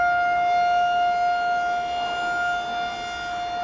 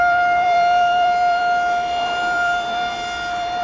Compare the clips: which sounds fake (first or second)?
second